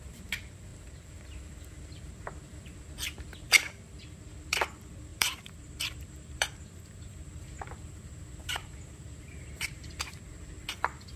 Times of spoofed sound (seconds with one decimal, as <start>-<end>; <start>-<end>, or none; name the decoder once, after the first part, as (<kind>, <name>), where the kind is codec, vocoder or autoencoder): 5.1-7.3 (vocoder, BigVGAN v2); 8.4-9.9